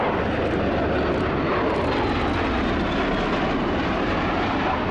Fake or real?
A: real